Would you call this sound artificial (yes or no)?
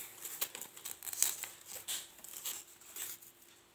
no